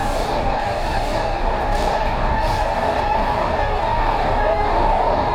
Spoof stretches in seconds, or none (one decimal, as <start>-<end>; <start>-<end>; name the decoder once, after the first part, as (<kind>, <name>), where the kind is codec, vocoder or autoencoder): 0.0-5.3 (codec, DAC)